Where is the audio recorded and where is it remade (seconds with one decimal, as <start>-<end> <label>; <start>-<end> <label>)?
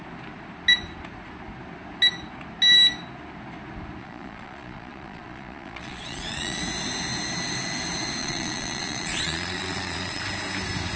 0.0-4.0 recorded; 4.0-6.6 remade; 6.6-8.2 recorded; 8.2-10.2 remade; 10.2-11.0 recorded